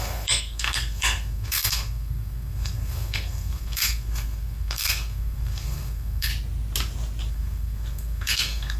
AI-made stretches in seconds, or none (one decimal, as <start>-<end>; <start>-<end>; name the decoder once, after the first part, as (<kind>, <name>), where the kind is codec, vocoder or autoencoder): 0.0-6.3 (codec, SNAC); 7.3-8.8